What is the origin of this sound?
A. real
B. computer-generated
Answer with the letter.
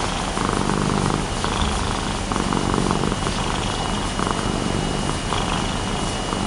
A